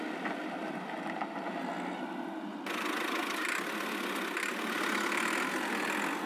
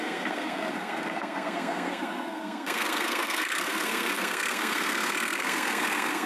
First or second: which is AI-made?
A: second